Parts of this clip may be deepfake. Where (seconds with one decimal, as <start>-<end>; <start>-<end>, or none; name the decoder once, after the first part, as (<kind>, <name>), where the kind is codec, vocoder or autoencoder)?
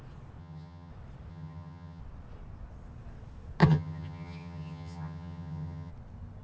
0.4-0.9 (vocoder, HiFi-GAN); 1.3-2.0; 3.6-5.9